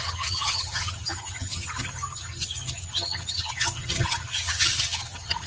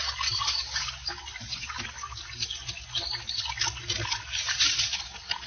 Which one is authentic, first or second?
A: second